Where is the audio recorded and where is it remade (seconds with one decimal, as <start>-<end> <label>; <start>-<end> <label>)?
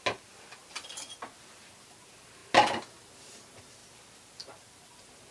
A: 0.0-5.3 recorded